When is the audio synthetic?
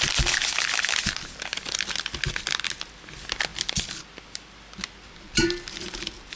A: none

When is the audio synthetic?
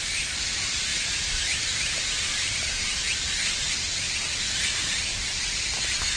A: 0.0-5.1 (vocoder, BigVGAN v2)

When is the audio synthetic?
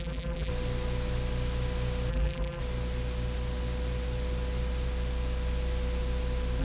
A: 0.0-0.5 (vocoder, BigVGAN v2); 2.1-2.6